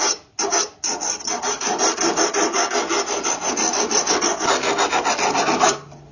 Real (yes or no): yes